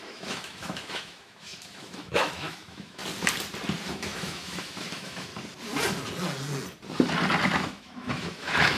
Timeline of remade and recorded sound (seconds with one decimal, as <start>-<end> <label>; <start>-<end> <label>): 0.0-3.0 remade; 3.0-3.9 recorded; 3.9-5.3 remade; 5.3-7.6 recorded; 7.6-8.8 remade